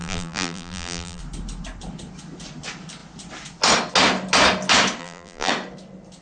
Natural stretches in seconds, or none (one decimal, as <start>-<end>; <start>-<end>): 1.2-5.0; 5.5-6.2